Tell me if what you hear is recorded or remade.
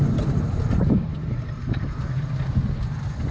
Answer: recorded